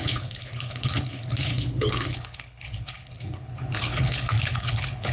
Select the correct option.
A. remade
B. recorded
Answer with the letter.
A